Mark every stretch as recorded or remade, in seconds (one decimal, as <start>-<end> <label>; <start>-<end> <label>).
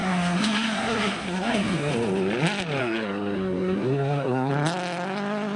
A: 0.0-1.9 remade; 1.9-2.8 recorded; 2.8-4.5 remade; 4.5-5.6 recorded